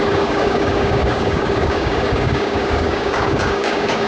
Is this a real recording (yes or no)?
no